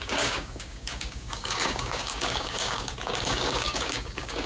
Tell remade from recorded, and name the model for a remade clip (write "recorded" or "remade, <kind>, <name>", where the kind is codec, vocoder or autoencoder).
remade, codec, DAC